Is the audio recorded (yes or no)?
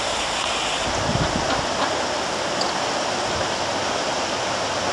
yes